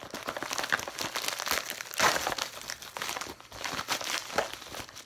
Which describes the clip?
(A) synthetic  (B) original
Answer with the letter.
B